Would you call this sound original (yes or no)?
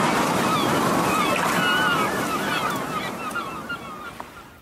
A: yes